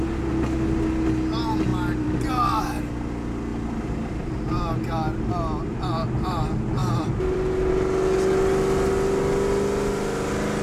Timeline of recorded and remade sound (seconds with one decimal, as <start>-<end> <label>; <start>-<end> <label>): 0.0-1.7 recorded; 1.7-2.3 remade; 2.3-3.5 recorded; 3.5-4.3 remade; 4.3-6.8 recorded; 6.8-7.7 remade; 7.7-10.6 recorded